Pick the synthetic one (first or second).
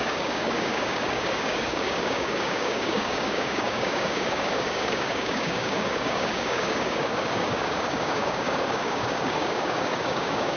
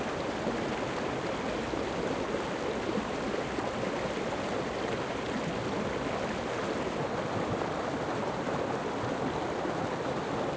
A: first